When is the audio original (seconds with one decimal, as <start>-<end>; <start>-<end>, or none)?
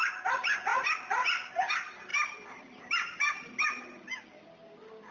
0.0-0.7; 1.5-2.1; 3.5-5.1